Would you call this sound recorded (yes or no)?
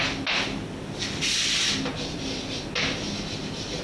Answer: yes